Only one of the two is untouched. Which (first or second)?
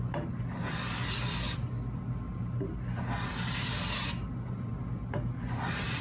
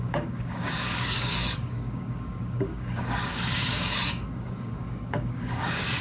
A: first